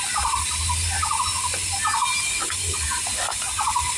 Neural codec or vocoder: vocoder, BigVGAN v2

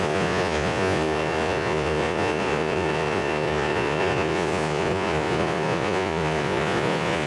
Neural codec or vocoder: vocoder, Vocos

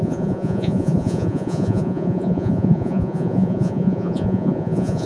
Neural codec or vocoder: vocoder, Vocos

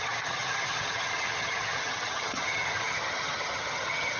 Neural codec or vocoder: vocoder, HiFi-GAN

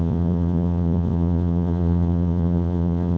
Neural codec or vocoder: vocoder, Vocos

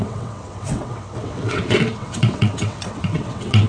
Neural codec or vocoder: vocoder, WaveNeXt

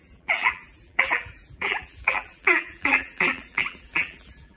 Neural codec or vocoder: vocoder, BigVGAN v2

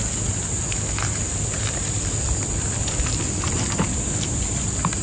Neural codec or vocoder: none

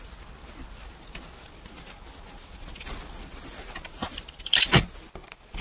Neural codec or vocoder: none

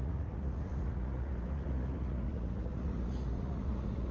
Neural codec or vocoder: vocoder, Vocos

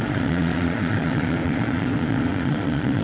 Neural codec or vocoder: vocoder, Vocos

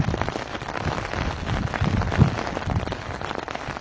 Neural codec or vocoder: none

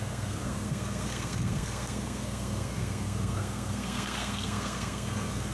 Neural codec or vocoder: codec, SNAC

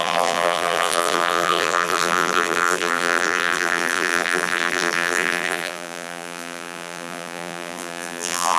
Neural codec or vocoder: vocoder, BigVGAN v2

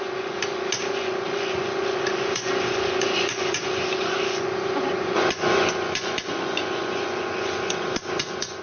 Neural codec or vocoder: vocoder, Vocos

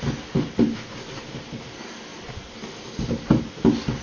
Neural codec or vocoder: none